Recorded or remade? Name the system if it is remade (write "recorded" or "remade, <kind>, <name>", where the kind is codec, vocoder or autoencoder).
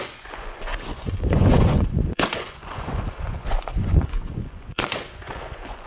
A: remade, vocoder, Vocos